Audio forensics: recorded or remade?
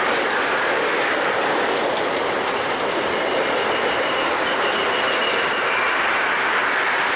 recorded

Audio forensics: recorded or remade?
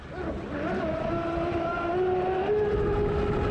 recorded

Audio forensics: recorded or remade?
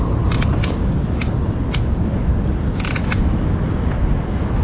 recorded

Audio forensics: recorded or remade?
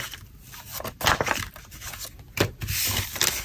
recorded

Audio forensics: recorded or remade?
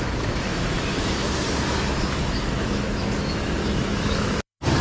remade